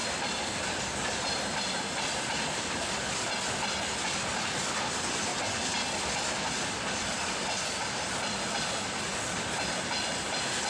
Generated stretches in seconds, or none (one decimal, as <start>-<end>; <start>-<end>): 0.0-3.3